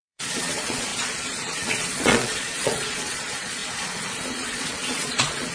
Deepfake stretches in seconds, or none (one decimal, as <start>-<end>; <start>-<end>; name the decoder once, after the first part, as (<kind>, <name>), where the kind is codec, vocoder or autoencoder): 0.0-5.5 (vocoder, Vocos)